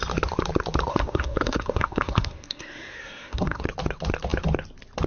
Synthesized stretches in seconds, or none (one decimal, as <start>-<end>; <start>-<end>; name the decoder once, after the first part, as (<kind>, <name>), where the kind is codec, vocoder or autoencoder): 0.9-3.6 (codec, SNAC)